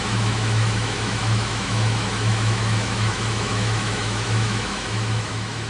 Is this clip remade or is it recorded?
remade